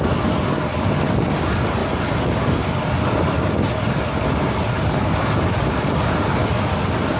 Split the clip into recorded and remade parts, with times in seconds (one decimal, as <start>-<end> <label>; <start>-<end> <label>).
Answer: 0.0-7.2 recorded